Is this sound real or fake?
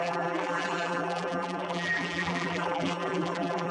fake